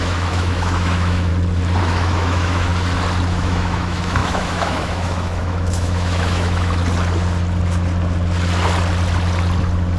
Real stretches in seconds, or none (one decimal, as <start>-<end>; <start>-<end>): 1.3-1.8; 2.7-3.3; 6.8-10.0